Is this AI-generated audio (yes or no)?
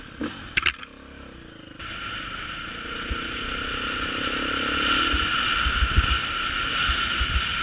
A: no